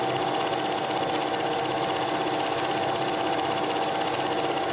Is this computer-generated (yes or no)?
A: no